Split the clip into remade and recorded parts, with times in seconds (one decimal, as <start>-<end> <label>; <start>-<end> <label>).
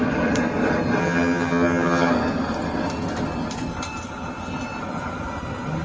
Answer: 0.0-1.0 recorded; 1.0-2.1 remade; 2.1-5.8 recorded